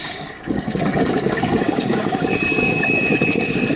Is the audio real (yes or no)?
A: no